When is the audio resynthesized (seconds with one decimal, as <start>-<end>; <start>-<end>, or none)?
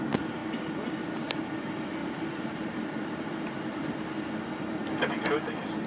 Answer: 2.0-4.3